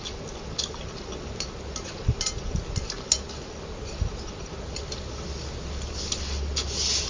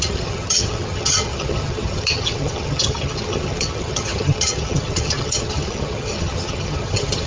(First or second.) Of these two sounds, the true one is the first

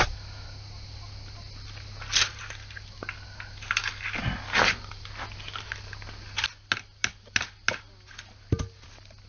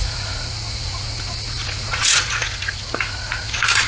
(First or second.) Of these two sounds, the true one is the first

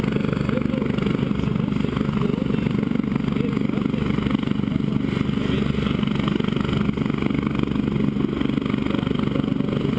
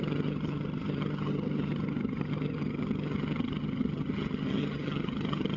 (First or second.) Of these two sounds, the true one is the first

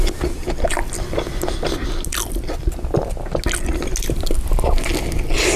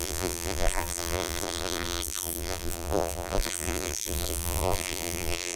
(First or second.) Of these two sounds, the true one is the first